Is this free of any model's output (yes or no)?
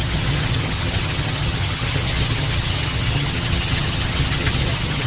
no